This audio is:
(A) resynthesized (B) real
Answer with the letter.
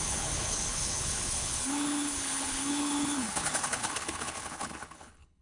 A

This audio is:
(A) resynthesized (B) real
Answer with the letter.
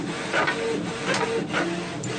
B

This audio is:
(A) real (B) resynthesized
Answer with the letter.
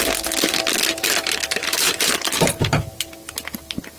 A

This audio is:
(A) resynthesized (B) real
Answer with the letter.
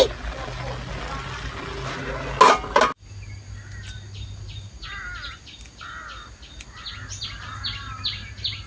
B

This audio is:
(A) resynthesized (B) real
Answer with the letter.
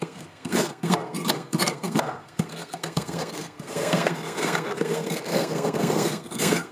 A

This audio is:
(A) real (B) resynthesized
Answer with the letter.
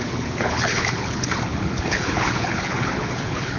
B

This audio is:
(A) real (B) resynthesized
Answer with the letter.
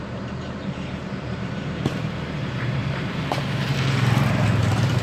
B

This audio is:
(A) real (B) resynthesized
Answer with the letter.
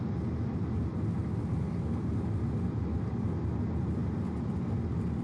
A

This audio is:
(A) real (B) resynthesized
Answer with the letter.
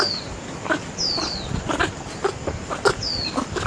A